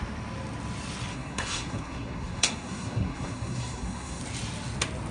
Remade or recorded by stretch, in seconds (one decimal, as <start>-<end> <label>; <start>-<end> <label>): 0.0-1.1 recorded; 1.1-4.2 remade; 4.2-5.1 recorded